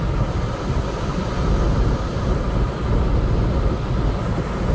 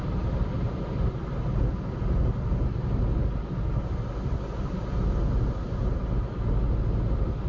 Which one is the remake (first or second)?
first